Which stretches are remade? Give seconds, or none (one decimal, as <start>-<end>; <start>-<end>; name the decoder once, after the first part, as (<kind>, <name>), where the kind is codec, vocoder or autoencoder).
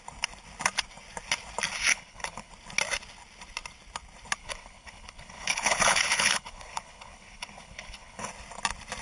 1.9-2.5 (codec, HILCodec); 4.4-8.3